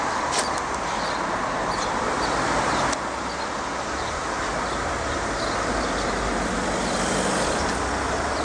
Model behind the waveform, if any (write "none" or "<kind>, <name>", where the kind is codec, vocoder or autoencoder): none